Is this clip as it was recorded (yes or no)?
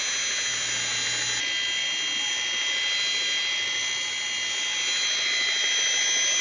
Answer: yes